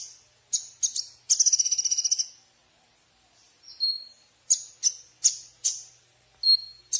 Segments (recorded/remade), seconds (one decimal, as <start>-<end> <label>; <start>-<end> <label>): 0.0-7.0 recorded